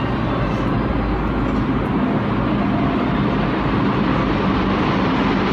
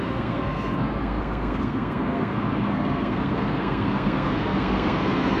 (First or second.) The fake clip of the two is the second